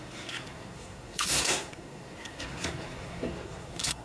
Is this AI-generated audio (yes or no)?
yes